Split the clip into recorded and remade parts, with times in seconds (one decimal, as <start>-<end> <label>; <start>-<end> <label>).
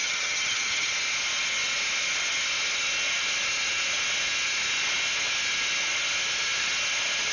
0.0-0.9 remade; 0.9-7.3 recorded